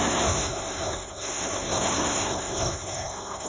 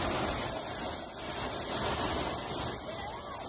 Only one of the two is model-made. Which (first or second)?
first